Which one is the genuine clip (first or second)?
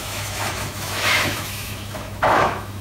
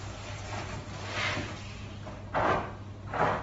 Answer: second